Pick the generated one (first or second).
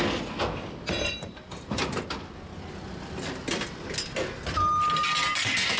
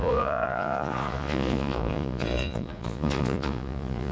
second